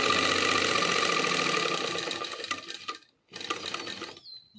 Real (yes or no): yes